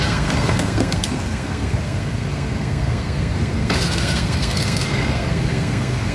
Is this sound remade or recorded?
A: remade